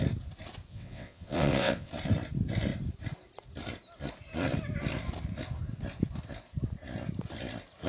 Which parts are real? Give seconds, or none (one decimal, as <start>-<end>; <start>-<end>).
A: 0.0-0.7; 1.9-7.9